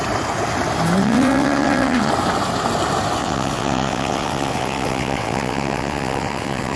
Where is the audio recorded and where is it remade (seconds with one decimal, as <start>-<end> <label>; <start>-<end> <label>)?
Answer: 0.0-1.0 recorded; 1.0-2.1 remade; 2.1-3.2 recorded; 3.2-6.8 remade

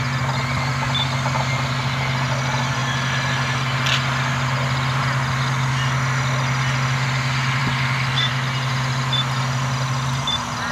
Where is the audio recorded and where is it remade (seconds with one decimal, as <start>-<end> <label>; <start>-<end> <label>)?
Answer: 0.0-10.7 recorded

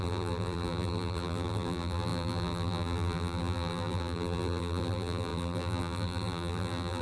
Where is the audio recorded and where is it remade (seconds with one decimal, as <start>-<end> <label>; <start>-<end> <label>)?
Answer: 0.0-7.0 remade